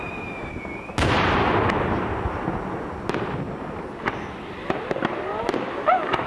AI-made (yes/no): no